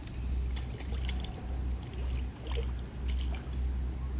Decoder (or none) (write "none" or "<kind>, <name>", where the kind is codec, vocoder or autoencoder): none